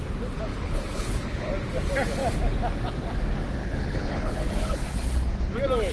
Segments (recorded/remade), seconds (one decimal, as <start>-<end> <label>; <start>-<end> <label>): 0.0-0.5 recorded; 0.5-1.5 remade; 1.5-3.6 recorded; 3.6-5.3 remade; 5.3-5.9 recorded